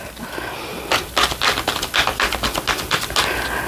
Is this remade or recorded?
recorded